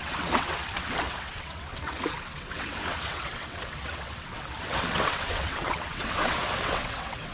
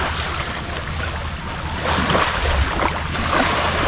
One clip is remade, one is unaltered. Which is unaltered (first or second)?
second